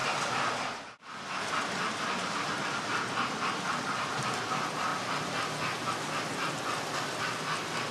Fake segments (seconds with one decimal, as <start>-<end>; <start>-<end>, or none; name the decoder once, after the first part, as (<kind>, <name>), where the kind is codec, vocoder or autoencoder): none